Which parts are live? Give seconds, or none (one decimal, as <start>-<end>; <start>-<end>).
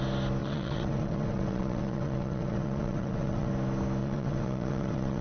0.0-0.4; 3.5-4.0